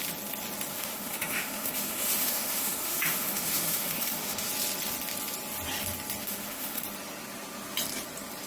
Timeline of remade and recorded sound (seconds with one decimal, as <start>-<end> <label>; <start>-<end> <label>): 0.0-0.7 recorded; 0.7-4.5 remade; 4.5-6.2 recorded; 6.2-6.8 remade; 6.8-8.5 recorded